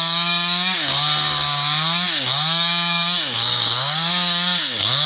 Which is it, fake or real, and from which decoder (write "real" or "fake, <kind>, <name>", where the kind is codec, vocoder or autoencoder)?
fake, codec, DAC